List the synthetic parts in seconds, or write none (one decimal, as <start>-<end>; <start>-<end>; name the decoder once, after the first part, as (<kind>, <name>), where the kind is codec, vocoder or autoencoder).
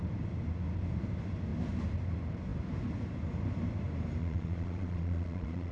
4.2-5.7 (vocoder, Vocos)